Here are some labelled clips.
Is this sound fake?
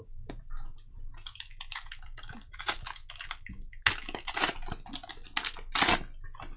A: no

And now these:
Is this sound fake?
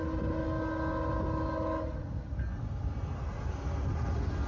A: no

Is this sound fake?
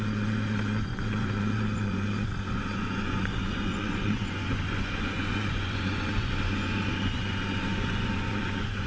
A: yes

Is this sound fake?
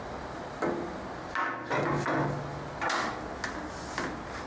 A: no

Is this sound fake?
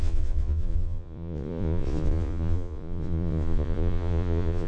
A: yes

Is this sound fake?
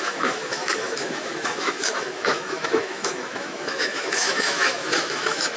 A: yes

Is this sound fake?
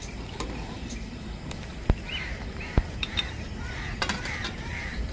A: yes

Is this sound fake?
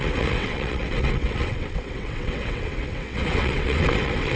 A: yes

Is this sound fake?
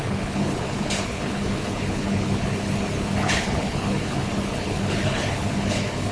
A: yes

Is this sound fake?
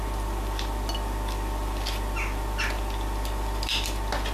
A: no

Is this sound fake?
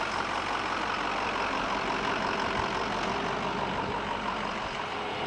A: no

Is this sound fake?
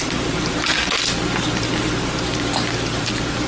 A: no